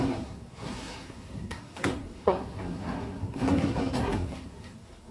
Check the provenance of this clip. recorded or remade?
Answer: remade